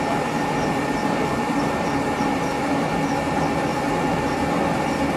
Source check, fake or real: fake